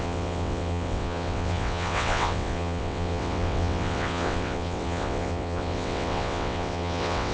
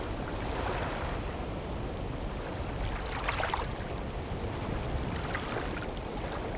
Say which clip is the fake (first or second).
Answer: first